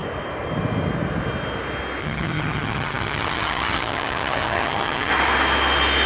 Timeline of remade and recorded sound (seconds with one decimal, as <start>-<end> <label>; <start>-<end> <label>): 0.0-2.0 recorded; 2.0-5.1 remade; 5.1-6.1 recorded

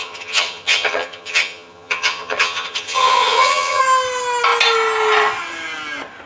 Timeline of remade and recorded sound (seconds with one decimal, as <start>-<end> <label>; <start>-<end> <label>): 0.0-3.8 remade; 3.8-6.3 recorded

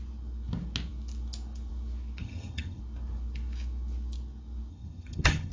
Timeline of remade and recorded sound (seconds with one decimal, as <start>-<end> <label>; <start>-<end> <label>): 0.0-2.2 recorded; 2.2-2.8 remade; 2.8-4.7 recorded; 4.7-5.5 remade

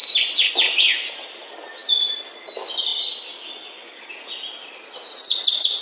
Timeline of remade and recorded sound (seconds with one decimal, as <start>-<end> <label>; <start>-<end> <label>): 0.0-5.8 recorded

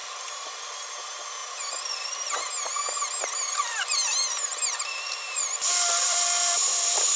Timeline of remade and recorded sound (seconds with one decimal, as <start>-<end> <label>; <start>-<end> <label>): 0.0-7.2 recorded

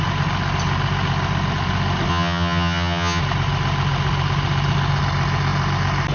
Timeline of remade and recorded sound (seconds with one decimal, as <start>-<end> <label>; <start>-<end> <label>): 0.0-2.1 recorded; 2.1-3.2 remade; 3.2-6.1 recorded

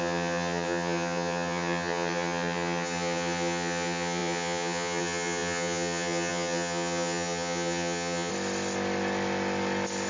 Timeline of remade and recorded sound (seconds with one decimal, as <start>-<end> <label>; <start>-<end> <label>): 0.0-8.3 remade; 8.3-10.1 recorded